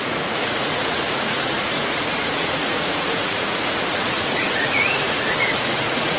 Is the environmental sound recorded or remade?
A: remade